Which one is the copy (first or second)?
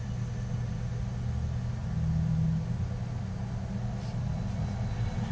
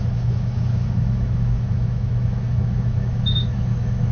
second